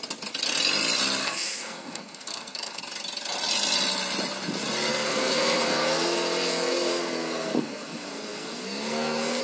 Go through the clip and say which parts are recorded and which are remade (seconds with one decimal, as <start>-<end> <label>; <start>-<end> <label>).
0.0-1.2 recorded; 1.2-2.8 remade; 2.8-4.9 recorded; 4.9-9.4 remade